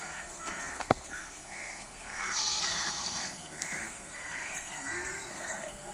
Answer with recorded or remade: remade